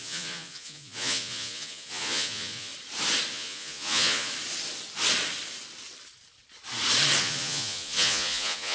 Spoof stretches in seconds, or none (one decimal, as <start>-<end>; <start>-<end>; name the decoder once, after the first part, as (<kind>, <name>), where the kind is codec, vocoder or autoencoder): 0.0-2.7 (vocoder, Vocos); 3.3-4.3; 7.2-8.7